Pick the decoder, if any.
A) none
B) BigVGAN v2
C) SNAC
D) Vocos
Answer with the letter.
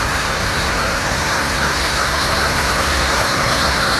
C